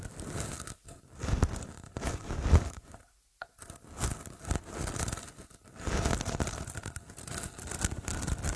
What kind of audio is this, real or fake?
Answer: real